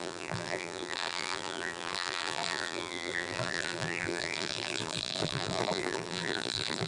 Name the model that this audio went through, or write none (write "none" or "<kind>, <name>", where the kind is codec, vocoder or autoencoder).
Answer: vocoder, BigVGAN v2